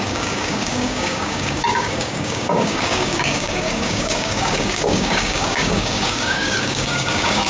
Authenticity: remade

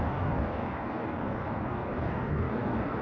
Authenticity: remade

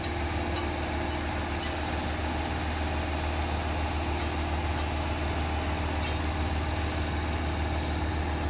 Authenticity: recorded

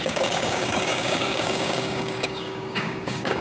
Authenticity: remade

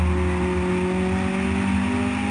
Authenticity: recorded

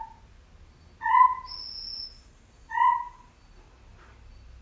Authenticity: recorded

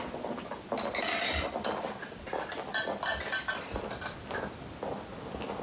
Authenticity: recorded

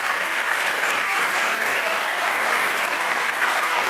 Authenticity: remade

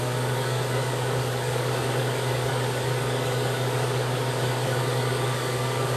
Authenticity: remade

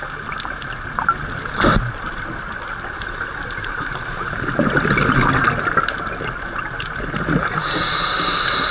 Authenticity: recorded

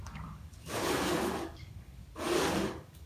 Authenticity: remade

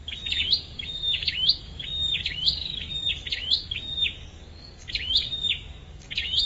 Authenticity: remade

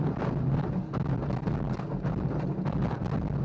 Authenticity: recorded